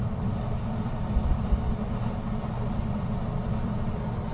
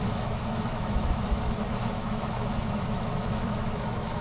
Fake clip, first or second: second